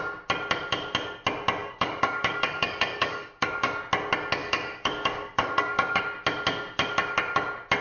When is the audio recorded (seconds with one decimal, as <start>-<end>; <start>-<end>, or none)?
0.0-1.6; 3.8-4.4; 6.0-7.8